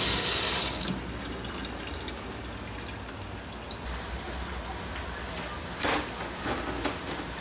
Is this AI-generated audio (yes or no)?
no